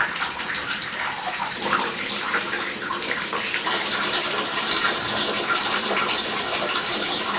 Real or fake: fake